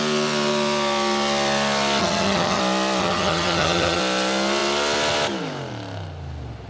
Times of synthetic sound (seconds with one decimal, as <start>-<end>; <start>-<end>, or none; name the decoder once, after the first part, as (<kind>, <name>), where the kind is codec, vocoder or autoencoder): 2.0-2.6 (vocoder, HiFi-GAN); 3.0-4.0